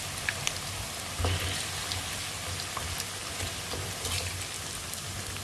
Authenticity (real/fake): real